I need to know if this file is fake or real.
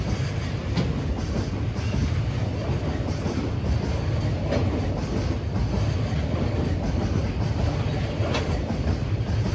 real